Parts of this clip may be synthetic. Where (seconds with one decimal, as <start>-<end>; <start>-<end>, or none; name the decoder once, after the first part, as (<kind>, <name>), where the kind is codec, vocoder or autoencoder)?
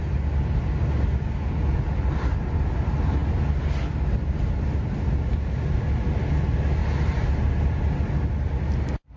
none